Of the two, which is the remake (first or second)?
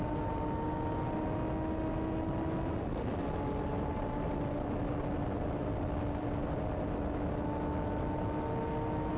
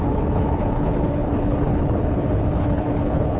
second